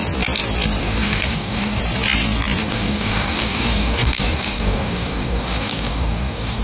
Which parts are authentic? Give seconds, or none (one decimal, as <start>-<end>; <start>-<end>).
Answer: 0.0-0.8; 1.8-2.6

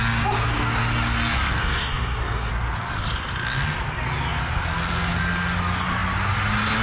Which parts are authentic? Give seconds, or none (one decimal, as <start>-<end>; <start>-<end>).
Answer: 0.0-1.6; 2.5-6.8

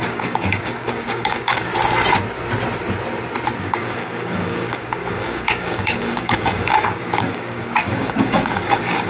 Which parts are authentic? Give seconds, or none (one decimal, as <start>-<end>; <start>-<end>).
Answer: 1.7-3.6

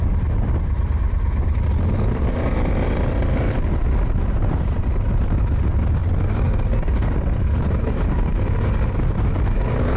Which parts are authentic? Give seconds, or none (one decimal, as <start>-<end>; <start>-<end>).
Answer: 0.0-10.0

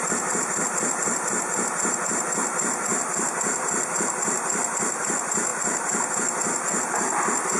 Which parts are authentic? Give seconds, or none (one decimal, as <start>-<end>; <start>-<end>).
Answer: 0.0-7.6

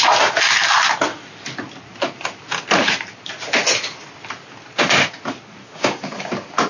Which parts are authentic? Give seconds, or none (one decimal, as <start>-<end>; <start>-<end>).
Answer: 0.0-5.6; 6.3-6.7

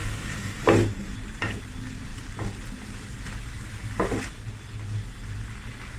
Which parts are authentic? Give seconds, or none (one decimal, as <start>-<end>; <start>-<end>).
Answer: 0.6-6.0